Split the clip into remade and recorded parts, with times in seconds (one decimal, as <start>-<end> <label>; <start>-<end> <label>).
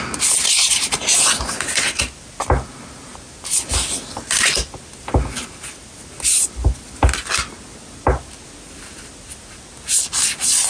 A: 0.0-1.1 recorded; 1.1-2.0 remade; 2.0-10.7 recorded